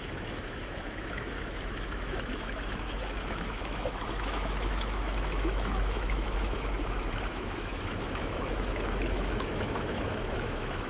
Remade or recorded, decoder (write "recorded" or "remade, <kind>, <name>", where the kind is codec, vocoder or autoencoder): remade, autoencoder, DAC-VAE